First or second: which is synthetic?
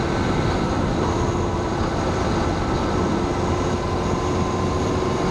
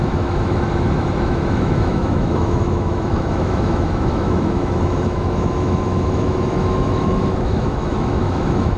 second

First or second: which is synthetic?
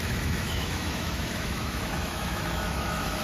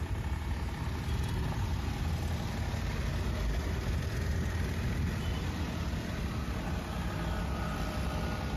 first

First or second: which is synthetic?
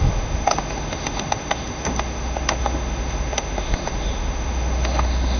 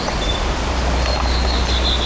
first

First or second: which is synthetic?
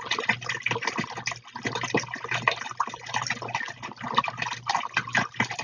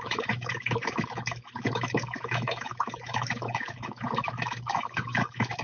second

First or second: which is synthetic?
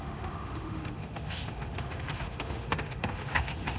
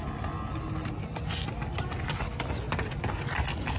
first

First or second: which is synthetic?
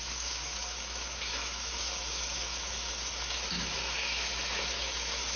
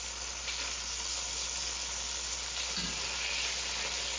first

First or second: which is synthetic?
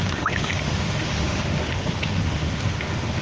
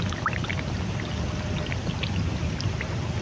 first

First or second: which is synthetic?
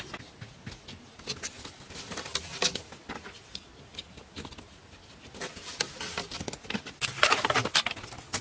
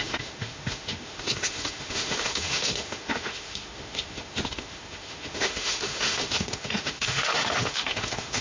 second